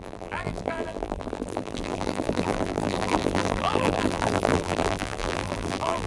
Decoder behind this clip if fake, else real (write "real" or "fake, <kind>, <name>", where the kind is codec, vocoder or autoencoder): fake, vocoder, BigVGAN v2